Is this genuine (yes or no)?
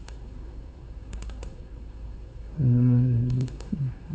no